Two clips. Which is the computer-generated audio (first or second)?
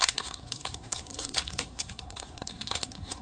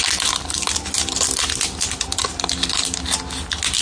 first